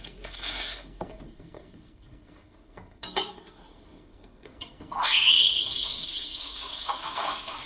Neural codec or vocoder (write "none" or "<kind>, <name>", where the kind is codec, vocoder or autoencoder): codec, SNAC